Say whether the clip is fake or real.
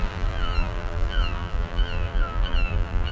fake